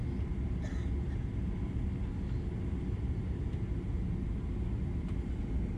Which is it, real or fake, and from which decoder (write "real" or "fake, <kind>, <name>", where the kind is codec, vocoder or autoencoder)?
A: real